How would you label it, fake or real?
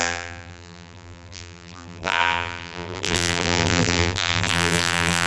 fake